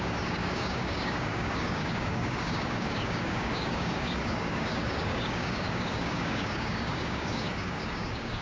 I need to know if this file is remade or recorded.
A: remade